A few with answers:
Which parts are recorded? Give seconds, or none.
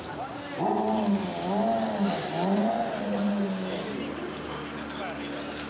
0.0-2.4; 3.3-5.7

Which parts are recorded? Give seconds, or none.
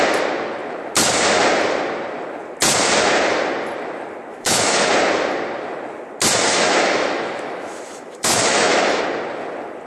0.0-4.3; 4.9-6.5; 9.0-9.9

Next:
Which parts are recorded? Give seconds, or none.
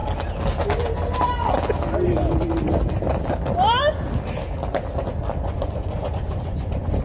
0.0-5.4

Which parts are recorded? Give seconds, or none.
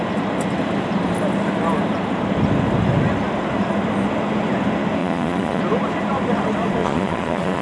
0.0-5.0; 5.6-6.8